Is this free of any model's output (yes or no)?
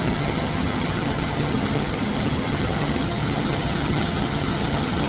no